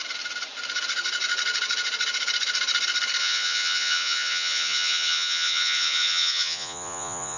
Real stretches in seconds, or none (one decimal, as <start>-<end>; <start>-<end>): 0.0-3.2